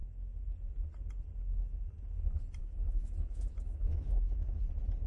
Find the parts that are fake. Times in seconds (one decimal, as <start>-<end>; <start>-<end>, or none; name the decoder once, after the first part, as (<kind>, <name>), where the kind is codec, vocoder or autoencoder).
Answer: 2.6-4.6 (autoencoder, DAC-VAE)